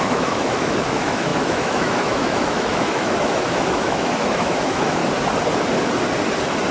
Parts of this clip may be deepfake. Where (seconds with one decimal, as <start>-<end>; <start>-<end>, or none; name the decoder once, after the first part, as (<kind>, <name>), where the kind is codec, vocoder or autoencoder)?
0.0-5.0 (autoencoder, DAC-VAE)